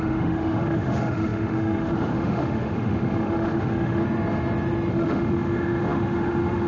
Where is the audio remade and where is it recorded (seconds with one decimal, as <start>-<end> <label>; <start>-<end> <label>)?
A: 0.0-4.0 remade; 4.0-4.9 recorded; 4.9-6.7 remade